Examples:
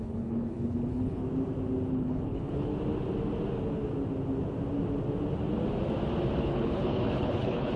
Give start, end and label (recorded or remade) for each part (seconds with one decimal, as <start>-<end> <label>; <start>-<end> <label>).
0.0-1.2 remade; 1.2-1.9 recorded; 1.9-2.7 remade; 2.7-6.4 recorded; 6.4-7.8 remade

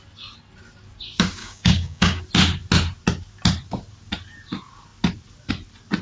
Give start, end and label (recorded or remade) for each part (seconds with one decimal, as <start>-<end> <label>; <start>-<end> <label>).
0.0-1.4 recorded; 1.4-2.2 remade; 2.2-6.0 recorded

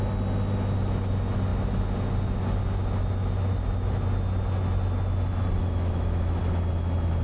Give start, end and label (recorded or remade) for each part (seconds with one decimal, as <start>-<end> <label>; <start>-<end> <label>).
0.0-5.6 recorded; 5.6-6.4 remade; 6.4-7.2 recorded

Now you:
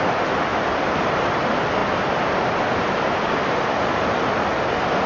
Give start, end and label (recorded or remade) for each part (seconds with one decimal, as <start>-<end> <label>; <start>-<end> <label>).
0.0-5.1 recorded

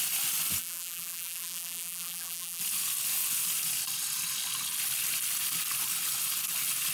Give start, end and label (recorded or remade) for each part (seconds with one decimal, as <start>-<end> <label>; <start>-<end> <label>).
0.0-0.6 recorded; 0.6-2.6 remade; 2.6-6.9 recorded

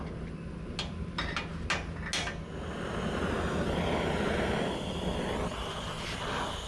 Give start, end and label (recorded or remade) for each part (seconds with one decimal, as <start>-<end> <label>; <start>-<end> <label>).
0.0-6.7 recorded